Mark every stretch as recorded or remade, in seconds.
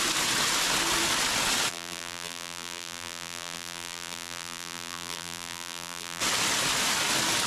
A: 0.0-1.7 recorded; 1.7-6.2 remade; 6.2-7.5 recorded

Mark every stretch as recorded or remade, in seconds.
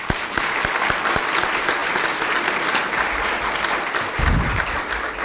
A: 0.0-5.2 recorded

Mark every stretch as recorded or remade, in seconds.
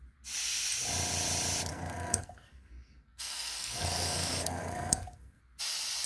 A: 0.0-1.7 recorded; 1.7-5.4 remade; 5.4-6.1 recorded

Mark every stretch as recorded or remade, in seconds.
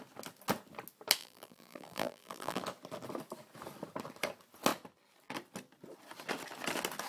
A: 0.0-1.2 recorded; 1.2-2.6 remade; 2.6-7.1 recorded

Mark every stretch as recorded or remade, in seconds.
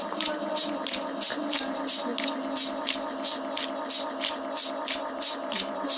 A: 0.0-2.1 remade; 2.1-5.0 recorded; 5.0-6.0 remade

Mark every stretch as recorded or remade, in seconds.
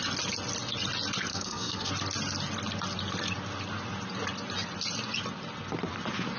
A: 0.0-1.3 recorded; 1.3-1.9 remade; 1.9-6.4 recorded